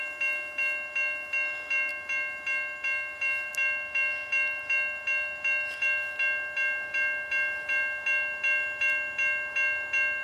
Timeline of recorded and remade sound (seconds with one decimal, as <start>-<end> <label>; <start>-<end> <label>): 0.0-10.2 recorded